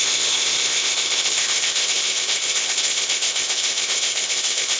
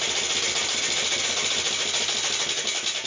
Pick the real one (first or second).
second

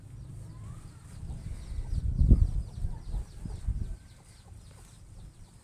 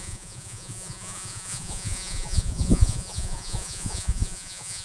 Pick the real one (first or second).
first